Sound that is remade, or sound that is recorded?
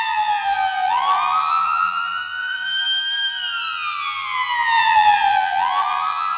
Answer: remade